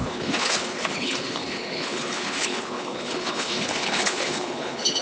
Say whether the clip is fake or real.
fake